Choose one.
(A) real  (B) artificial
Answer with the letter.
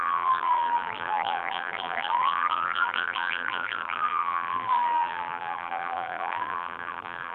B